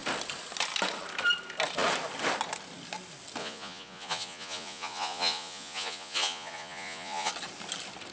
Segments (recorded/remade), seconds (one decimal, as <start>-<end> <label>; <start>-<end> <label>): 0.0-3.4 recorded; 3.4-7.3 remade; 7.3-8.1 recorded